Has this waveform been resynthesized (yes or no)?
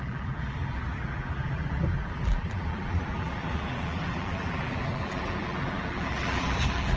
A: yes